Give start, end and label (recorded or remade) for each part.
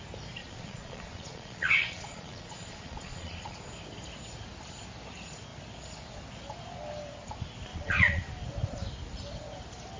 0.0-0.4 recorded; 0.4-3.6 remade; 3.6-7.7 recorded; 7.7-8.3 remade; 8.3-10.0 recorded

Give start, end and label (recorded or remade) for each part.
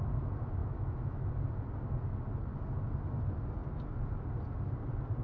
0.0-0.6 recorded; 0.6-1.3 remade; 1.3-5.2 recorded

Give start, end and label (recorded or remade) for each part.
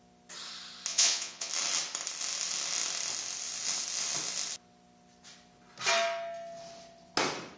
0.0-0.9 recorded; 0.9-1.5 remade; 1.5-7.6 recorded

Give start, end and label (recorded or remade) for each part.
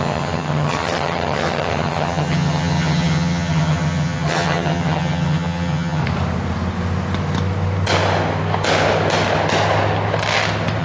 0.0-6.0 remade; 6.0-10.8 recorded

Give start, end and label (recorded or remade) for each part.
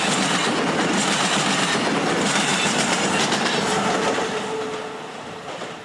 0.0-2.5 recorded; 2.5-4.6 remade; 4.6-5.8 recorded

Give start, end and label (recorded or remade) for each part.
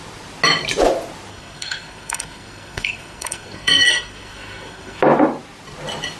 0.0-1.3 recorded; 1.3-5.0 remade; 5.0-6.2 recorded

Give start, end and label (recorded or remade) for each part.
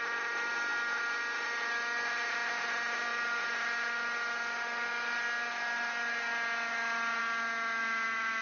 0.0-8.4 recorded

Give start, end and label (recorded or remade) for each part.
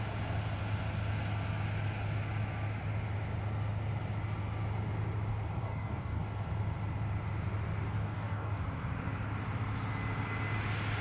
0.0-5.6 recorded; 5.6-6.2 remade; 6.2-8.0 recorded; 8.0-8.6 remade; 8.6-11.0 recorded